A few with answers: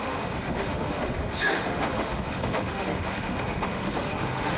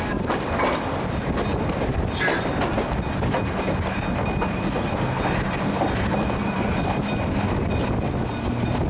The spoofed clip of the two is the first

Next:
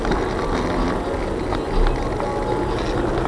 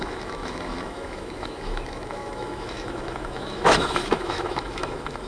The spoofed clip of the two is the second